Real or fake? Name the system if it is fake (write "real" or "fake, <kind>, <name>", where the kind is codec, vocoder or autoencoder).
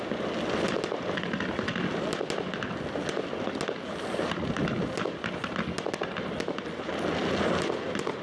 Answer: real